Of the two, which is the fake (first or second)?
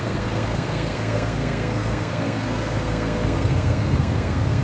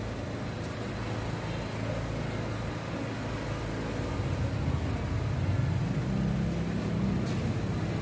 first